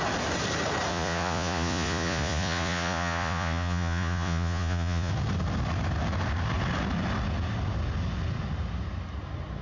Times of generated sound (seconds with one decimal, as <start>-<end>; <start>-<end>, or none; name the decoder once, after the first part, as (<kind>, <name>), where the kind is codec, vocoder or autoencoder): 0.9-5.1 (vocoder, Vocos)